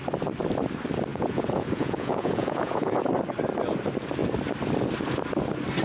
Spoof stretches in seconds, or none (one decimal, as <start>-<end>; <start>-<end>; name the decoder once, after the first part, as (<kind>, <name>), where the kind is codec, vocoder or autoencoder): 1.1-3.1 (vocoder, Vocos)